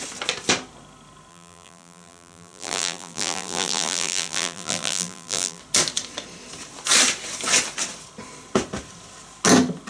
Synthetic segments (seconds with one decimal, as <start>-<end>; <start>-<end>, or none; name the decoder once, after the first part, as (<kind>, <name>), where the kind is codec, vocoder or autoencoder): 1.3-5.6 (vocoder, BigVGAN v2)